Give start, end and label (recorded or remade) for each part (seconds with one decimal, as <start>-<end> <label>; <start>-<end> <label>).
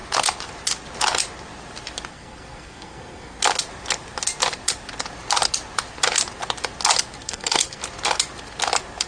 0.0-2.1 recorded; 2.1-3.4 remade; 3.4-7.2 recorded; 7.2-7.8 remade; 7.8-9.1 recorded